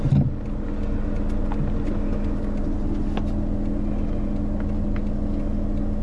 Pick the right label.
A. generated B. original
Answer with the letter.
B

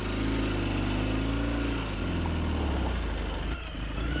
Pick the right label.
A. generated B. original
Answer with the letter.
B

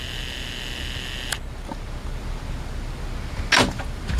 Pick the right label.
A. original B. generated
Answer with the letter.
A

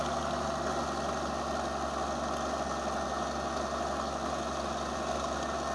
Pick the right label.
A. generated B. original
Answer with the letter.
B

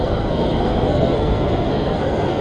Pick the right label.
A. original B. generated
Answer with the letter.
B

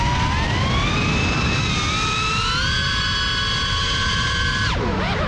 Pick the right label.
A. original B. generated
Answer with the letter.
A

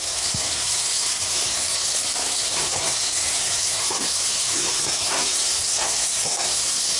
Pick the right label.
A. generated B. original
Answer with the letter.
A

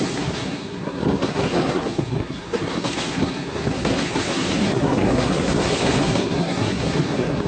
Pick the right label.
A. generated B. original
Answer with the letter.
A